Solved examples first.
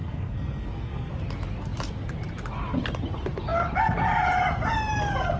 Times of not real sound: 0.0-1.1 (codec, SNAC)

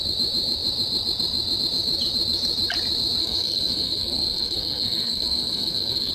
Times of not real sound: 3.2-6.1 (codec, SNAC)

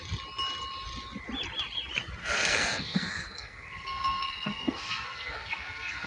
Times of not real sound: 2.2-6.1 (codec, SNAC)

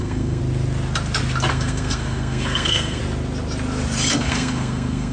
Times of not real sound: 0.0-0.4 (codec, SNAC); 1.5-3.0; 4.1-5.1

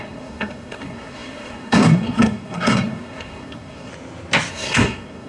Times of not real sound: 0.0-3.9 (codec, SNAC); 4.5-5.3